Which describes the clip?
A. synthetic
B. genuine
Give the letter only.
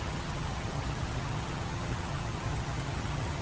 A